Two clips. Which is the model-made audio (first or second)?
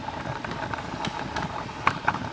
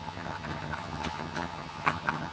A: second